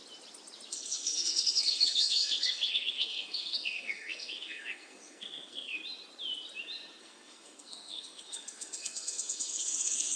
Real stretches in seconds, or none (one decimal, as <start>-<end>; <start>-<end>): 0.0-0.7; 5.8-7.0